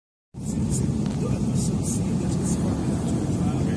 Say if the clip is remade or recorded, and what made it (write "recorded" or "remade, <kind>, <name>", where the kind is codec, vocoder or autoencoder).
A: recorded